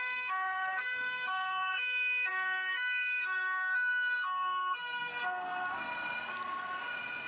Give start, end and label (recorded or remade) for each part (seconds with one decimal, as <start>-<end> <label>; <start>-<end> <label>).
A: 0.0-5.9 remade; 5.9-7.3 recorded